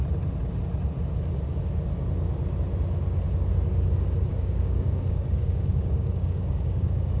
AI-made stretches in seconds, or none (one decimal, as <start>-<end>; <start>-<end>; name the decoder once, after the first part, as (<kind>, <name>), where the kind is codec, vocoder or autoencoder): 4.3-7.2 (codec, DAC)

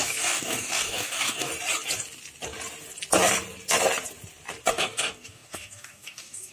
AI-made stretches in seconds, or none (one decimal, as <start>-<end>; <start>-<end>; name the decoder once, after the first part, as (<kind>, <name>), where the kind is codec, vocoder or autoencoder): 0.0-1.5 (codec, DAC); 4.7-6.5

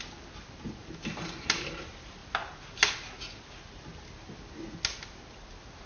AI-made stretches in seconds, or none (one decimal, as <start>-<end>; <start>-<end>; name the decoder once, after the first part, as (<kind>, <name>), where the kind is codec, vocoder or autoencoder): none

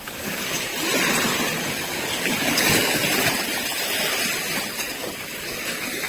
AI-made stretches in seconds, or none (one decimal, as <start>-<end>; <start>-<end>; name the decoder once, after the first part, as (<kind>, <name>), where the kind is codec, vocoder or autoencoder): 0.0-0.7 (codec, DAC); 1.6-3.0; 4.8-6.1

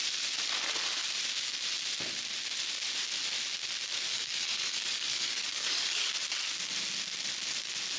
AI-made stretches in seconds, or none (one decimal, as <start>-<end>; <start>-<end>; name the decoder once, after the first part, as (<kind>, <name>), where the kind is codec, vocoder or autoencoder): 4.1-6.1 (codec, DAC)

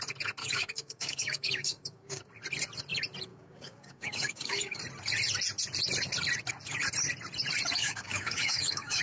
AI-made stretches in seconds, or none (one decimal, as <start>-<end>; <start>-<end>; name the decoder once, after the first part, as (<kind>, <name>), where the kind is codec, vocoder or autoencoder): 0.4-2.2 (codec, DAC); 3.3-4.8; 7.8-9.0

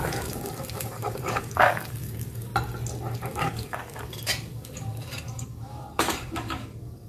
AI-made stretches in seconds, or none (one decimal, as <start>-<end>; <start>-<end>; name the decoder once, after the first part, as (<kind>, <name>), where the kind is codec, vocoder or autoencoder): 0.0-2.5 (codec, DAC); 3.2-7.1

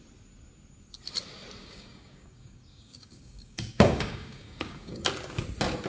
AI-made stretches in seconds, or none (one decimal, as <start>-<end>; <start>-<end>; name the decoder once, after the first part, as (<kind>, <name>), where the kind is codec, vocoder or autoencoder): 1.6-5.1 (codec, DAC)